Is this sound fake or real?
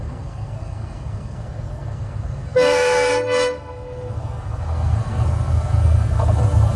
fake